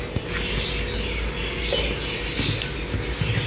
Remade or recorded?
recorded